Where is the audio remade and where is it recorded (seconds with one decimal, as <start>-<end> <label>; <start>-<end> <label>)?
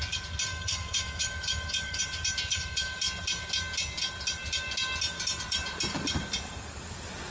0.0-0.5 recorded; 0.5-2.0 remade; 2.0-2.5 recorded; 2.5-3.0 remade; 3.0-7.3 recorded